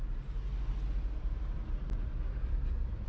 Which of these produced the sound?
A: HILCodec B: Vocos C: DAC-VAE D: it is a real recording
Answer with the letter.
D